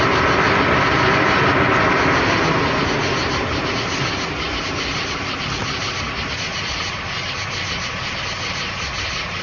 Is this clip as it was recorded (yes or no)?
yes